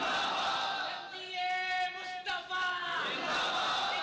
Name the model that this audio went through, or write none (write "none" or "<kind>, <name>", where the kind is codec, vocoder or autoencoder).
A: none